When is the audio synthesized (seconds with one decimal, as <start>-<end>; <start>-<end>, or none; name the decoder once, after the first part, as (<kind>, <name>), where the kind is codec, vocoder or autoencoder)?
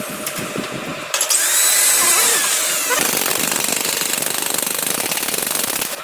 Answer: 3.3-4.1 (vocoder, BigVGAN v2)